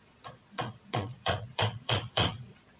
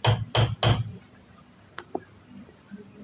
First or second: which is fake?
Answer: first